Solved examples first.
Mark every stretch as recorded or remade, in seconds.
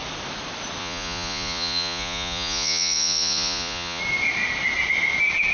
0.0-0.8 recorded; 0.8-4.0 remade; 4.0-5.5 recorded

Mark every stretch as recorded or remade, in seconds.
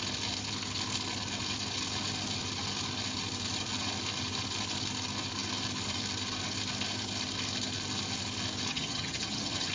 0.0-8.7 recorded; 8.7-9.7 remade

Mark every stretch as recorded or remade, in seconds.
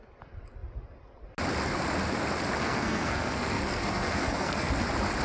0.0-2.6 recorded; 2.6-4.7 remade; 4.7-5.2 recorded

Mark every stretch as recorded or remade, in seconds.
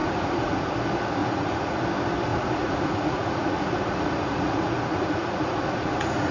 0.0-0.7 remade; 0.7-1.2 recorded; 1.2-1.8 remade; 1.8-2.3 recorded; 2.3-6.3 remade